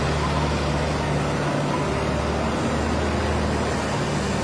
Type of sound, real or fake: real